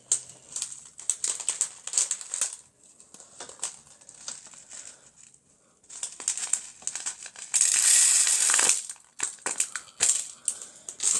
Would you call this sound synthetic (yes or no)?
no